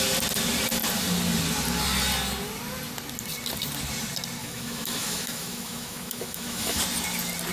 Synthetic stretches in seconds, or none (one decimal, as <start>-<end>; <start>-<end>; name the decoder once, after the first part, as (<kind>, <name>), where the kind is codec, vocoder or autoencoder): 4.4-6.8 (autoencoder, DAC-VAE)

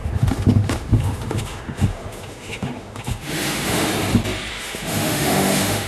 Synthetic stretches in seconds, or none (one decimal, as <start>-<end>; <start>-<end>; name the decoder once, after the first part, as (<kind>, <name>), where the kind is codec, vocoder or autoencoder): 0.0-3.9 (autoencoder, DAC-VAE); 4.5-5.9

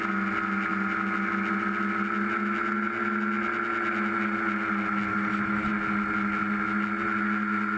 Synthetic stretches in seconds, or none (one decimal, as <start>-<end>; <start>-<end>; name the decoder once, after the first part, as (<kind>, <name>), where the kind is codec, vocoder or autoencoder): 5.1-5.7 (autoencoder, DAC-VAE)

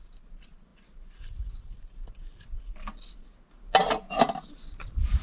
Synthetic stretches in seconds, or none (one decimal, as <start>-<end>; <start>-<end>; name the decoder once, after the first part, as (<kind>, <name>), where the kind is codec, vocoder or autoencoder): none